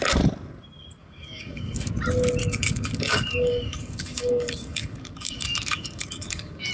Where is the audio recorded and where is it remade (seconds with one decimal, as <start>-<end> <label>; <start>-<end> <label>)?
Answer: 0.0-1.0 recorded; 1.0-1.9 remade; 1.9-2.4 recorded; 2.4-6.7 remade